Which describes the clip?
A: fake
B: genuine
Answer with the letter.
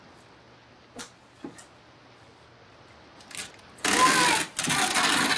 B